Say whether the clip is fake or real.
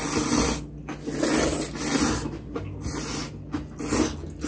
real